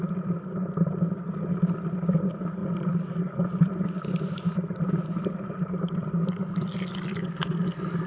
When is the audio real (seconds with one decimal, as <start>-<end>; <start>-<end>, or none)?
0.0-8.1